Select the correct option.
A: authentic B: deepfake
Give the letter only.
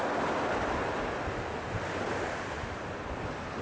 A